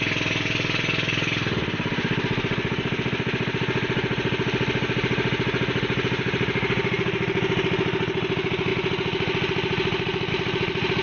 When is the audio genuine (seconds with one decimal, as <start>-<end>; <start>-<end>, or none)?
0.0-11.0